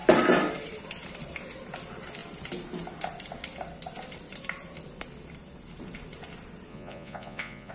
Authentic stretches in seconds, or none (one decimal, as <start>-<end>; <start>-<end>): 0.0-6.7